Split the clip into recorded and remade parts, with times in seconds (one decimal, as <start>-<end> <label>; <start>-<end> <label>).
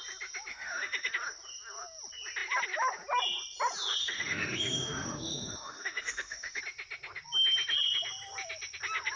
0.0-0.5 recorded; 0.5-1.1 remade; 1.1-4.0 recorded; 4.0-6.6 remade; 6.6-9.2 recorded